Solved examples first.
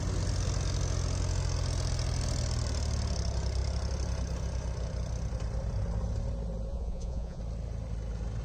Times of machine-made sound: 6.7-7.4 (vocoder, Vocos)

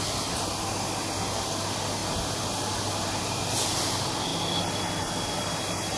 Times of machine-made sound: none

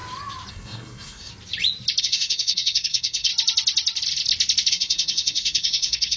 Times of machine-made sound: 0.5-1.3 (codec, SNAC); 2.0-3.3; 4.7-6.2

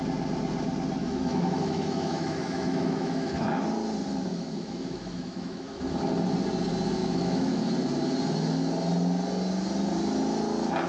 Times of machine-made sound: 1.0-3.5 (autoencoder, DAC-VAE); 4.3-5.8; 7.0-7.6